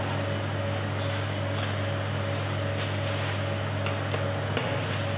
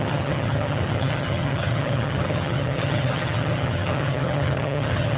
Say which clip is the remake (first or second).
second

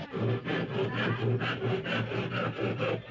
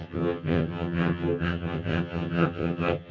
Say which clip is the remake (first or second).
second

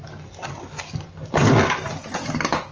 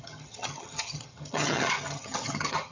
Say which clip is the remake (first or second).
second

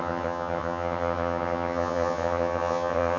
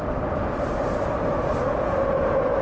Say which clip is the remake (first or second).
first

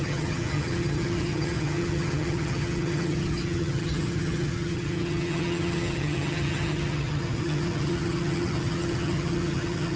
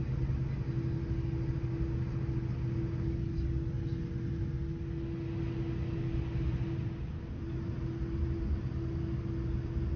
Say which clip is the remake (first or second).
first